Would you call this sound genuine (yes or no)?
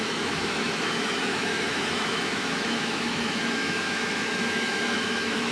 no